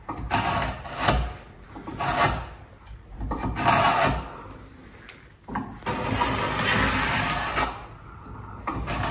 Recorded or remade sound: recorded